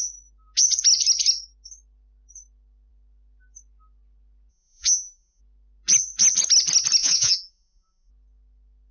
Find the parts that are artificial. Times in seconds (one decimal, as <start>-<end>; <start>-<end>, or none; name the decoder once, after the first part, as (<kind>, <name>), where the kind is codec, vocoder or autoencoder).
4.5-5.4 (vocoder, Vocos); 7.0-8.1